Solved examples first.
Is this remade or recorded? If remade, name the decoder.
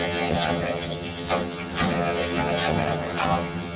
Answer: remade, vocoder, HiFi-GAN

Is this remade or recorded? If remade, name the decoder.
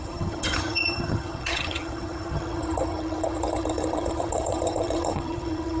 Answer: remade, vocoder, HiFi-GAN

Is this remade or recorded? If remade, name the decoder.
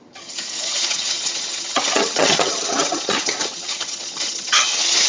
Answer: remade, vocoder, HiFi-GAN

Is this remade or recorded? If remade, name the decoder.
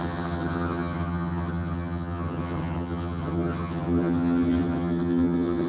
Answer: remade, vocoder, HiFi-GAN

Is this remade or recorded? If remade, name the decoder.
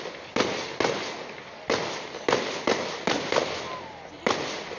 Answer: recorded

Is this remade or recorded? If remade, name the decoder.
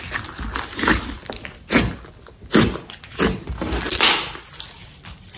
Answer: recorded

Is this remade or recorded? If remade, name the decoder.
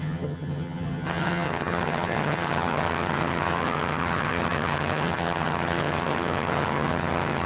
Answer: remade, vocoder, HiFi-GAN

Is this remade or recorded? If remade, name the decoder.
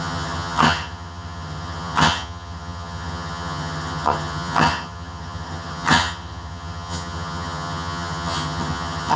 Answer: remade, vocoder, HiFi-GAN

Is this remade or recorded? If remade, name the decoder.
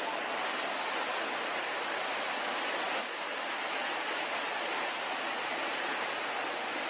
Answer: recorded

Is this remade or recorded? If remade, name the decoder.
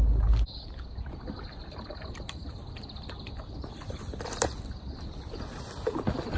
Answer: recorded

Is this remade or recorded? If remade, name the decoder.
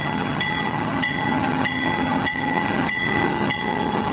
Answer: remade, vocoder, HiFi-GAN